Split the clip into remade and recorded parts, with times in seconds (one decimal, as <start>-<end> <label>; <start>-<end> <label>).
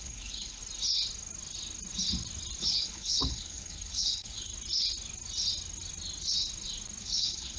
0.0-0.6 remade; 0.6-2.6 recorded; 2.6-4.5 remade; 4.5-7.0 recorded; 7.0-7.6 remade